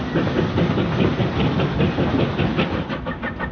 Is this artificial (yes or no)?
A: no